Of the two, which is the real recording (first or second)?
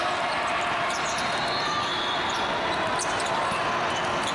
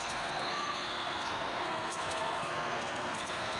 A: first